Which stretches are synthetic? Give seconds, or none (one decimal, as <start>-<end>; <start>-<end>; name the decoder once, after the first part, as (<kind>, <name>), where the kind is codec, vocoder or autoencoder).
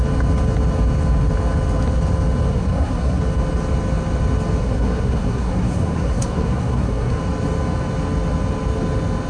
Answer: 2.5-3.2 (codec, SNAC); 4.6-7.2